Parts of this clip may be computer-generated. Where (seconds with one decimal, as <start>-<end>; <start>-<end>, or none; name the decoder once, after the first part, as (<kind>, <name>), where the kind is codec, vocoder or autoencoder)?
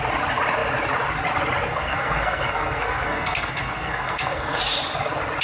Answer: 1.7-4.6 (codec, SNAC)